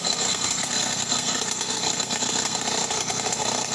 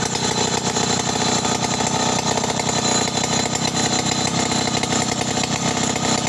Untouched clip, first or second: second